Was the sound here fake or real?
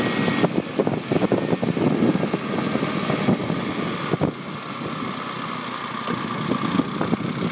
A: real